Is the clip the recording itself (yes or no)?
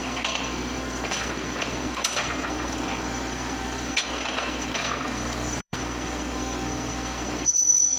no